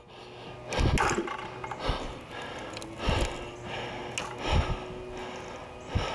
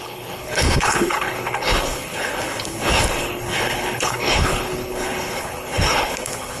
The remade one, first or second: second